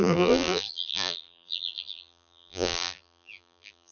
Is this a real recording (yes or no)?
no